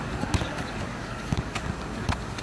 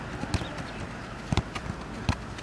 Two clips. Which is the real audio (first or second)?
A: second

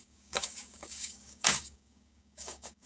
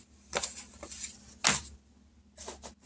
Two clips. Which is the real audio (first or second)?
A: second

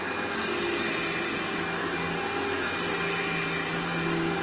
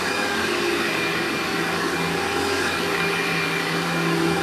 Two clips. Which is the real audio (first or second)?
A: first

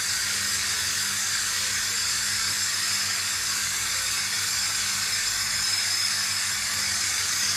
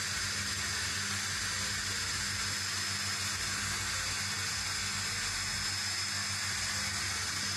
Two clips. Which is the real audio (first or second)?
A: second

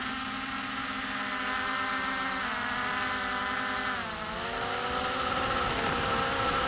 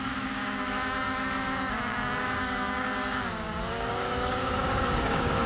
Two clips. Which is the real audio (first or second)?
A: first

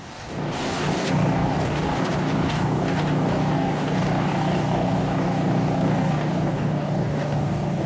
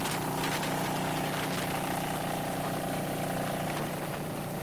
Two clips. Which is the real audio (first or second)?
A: second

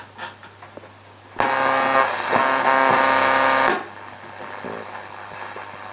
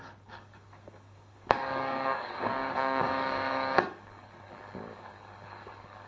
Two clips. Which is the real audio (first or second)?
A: first